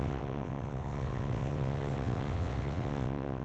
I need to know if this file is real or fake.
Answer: fake